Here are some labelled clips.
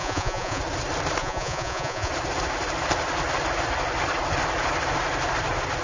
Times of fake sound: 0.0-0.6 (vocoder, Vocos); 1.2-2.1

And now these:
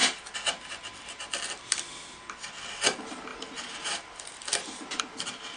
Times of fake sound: 3.3-5.0 (vocoder, BigVGAN v2)